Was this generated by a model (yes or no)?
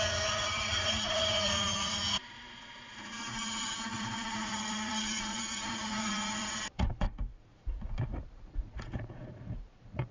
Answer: yes